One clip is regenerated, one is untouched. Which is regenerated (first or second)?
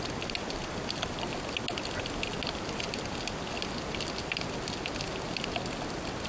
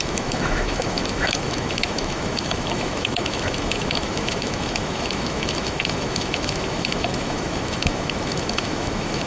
second